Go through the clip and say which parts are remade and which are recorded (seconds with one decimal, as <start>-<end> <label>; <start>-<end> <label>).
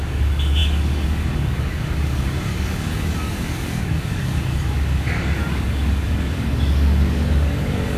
0.0-8.0 remade